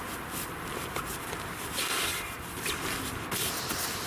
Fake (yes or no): no